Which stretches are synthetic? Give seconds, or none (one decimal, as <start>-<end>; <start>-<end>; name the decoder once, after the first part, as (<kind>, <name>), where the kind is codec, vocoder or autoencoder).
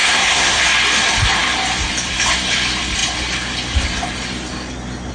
0.0-0.6 (codec, SNAC)